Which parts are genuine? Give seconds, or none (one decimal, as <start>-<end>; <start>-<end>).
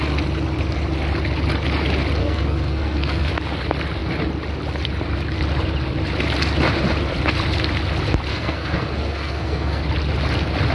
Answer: 0.0-2.2; 3.3-8.3; 9.8-10.7